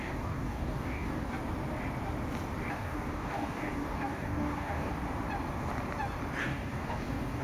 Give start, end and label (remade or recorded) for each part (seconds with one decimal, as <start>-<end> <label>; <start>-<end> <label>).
0.0-1.4 remade; 1.4-2.7 recorded; 2.7-4.9 remade; 4.9-6.4 recorded; 6.4-7.4 remade